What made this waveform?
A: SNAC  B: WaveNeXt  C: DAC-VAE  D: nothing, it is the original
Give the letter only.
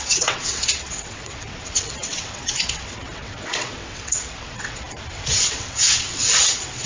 B